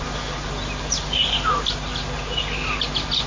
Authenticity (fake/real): real